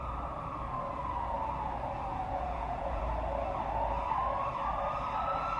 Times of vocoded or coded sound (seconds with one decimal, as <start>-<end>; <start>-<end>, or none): 2.1-3.0